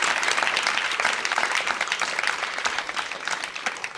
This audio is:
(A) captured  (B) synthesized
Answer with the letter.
B